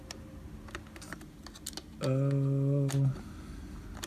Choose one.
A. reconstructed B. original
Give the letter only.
B